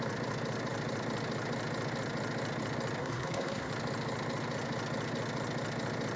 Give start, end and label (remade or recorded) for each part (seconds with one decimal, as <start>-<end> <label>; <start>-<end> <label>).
0.0-3.0 recorded; 3.0-3.7 remade; 3.7-6.2 recorded